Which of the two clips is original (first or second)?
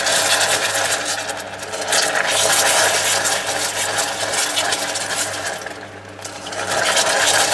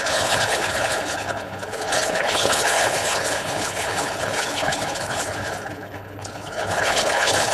first